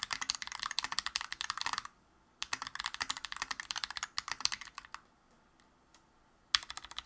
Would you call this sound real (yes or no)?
yes